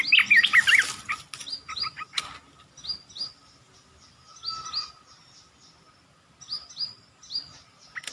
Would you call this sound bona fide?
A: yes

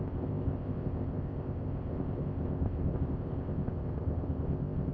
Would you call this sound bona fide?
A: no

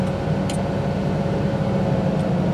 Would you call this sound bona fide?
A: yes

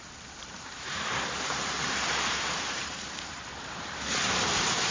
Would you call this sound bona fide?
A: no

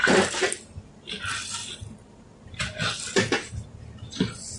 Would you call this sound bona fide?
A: yes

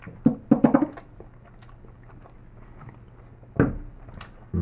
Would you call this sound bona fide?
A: yes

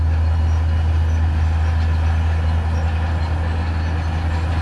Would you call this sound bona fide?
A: yes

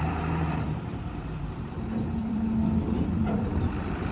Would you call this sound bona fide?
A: no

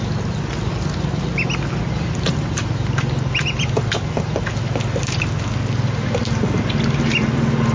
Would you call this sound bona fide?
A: yes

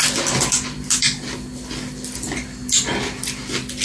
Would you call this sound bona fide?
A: yes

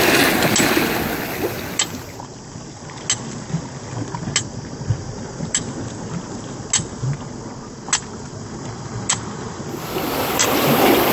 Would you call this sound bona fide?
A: yes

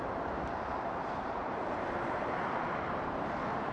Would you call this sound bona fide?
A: no